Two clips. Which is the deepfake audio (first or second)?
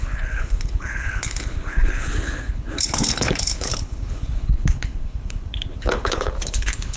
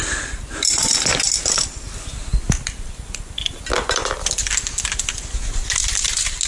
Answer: first